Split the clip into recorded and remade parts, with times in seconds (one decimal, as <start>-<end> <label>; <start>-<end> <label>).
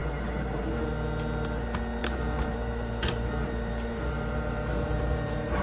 0.0-0.6 remade; 0.6-2.0 recorded; 2.0-5.6 remade